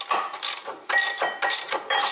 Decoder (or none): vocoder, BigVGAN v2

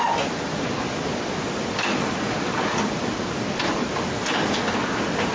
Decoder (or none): none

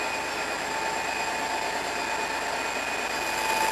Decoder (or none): none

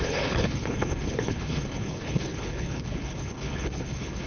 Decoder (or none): codec, HILCodec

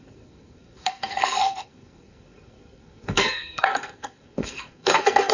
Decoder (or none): codec, SNAC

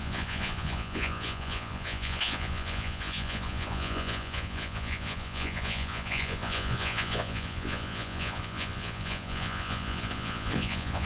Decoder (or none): vocoder, Vocos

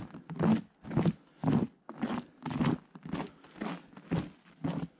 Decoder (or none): none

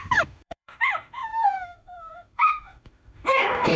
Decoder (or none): autoencoder, DAC-VAE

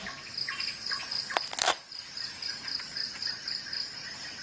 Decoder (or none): none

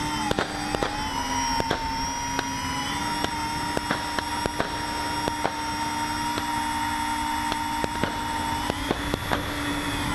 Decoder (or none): none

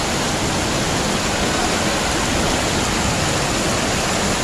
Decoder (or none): none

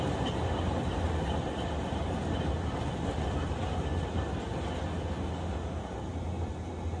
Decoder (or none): none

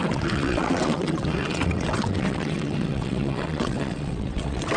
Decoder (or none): vocoder, WaveNeXt